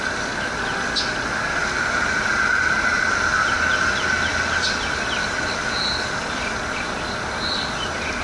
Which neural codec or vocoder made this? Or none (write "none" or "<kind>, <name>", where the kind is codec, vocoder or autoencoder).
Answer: none